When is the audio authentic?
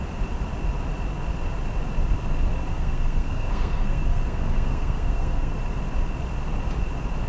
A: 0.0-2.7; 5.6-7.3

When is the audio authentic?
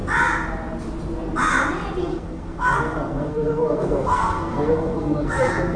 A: 0.0-2.0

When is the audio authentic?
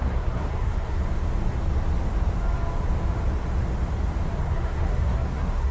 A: 1.0-4.4